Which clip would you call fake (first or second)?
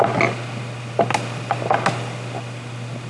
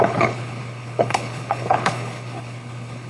second